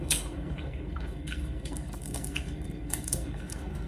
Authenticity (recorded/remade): remade